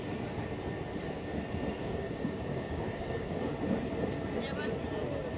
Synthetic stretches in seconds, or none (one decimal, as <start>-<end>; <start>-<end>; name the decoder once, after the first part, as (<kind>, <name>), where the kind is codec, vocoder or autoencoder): 1.8-3.5 (codec, DAC)